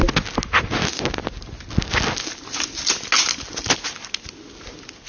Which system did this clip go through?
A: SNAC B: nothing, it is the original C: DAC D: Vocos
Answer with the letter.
B